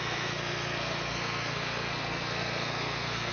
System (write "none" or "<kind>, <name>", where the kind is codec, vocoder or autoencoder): codec, SNAC